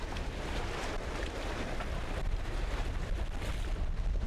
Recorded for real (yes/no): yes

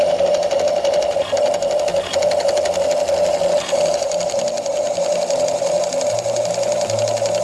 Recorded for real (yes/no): yes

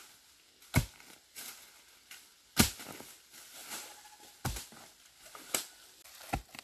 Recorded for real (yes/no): yes